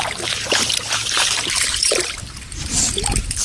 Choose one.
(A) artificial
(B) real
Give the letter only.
A